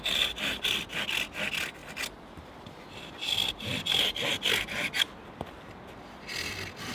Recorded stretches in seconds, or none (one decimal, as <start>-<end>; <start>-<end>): 0.0-6.9